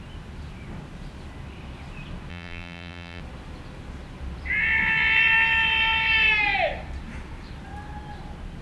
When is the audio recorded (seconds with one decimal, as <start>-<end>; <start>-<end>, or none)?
0.0-2.3; 3.2-8.6